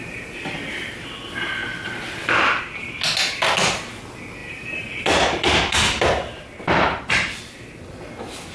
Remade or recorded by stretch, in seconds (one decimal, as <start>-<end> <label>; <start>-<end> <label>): 0.0-4.4 recorded; 4.4-6.1 remade; 6.1-8.5 recorded